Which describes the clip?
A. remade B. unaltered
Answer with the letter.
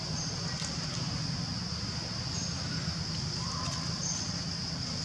B